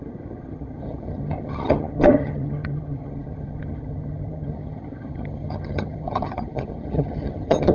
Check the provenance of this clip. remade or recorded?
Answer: remade